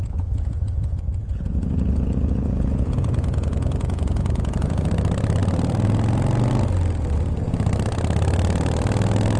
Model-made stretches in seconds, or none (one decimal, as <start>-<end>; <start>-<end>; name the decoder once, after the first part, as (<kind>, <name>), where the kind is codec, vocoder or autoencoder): 0.0-4.9 (vocoder, Vocos)

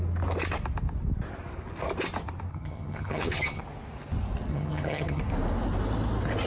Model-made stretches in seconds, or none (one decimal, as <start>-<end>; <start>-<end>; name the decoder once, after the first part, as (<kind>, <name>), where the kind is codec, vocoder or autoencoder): 2.5-3.6 (vocoder, HiFi-GAN); 4.5-5.2

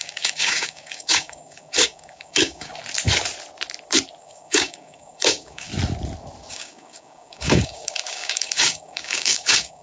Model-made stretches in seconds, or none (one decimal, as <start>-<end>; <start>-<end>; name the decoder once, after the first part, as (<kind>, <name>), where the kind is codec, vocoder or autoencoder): 0.0-2.7 (codec, DAC); 4.2-5.7; 6.5-9.8

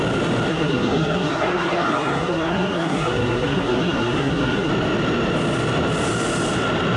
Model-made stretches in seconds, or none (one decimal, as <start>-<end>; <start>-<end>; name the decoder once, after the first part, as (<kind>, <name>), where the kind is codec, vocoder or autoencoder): 0.5-4.7 (codec, SNAC)

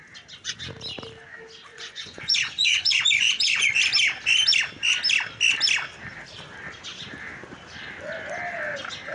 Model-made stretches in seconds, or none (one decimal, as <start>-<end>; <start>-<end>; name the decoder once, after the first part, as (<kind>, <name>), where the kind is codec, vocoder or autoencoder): 1.7-3.8 (vocoder, Vocos)

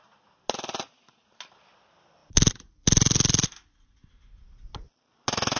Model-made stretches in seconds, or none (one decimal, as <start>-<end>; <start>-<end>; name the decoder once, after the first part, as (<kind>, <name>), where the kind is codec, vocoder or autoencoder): none

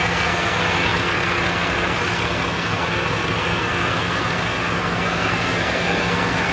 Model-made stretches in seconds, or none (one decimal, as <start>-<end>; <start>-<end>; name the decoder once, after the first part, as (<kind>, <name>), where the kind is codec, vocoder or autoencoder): 0.0-6.5 (codec, SNAC)